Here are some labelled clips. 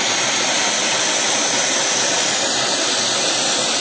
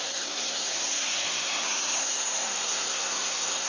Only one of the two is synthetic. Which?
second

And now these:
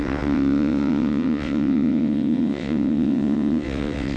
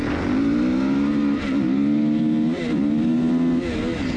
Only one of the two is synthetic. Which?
first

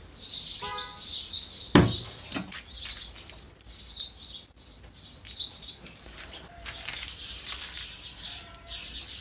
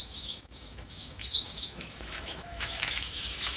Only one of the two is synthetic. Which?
second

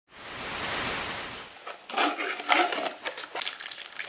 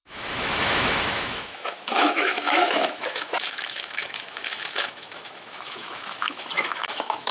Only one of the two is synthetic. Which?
second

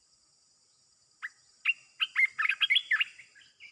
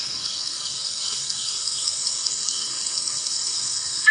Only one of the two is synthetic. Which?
second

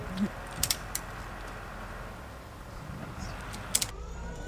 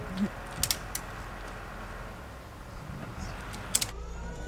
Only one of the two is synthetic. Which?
first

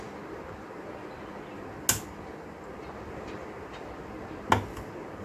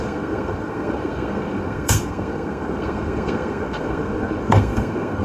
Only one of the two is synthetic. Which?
second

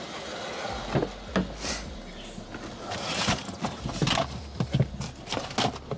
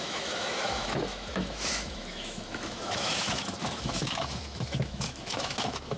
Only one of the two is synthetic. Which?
second